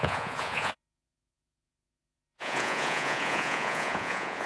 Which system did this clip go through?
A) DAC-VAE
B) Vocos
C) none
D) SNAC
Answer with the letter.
B